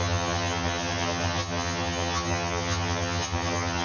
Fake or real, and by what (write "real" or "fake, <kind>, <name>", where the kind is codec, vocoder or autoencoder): fake, vocoder, HiFi-GAN